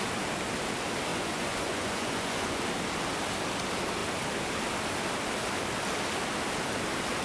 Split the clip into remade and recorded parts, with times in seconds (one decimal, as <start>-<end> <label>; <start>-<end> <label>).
0.0-1.1 recorded; 1.1-2.6 remade; 2.6-7.2 recorded